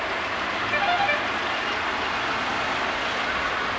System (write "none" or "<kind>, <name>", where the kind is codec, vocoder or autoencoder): none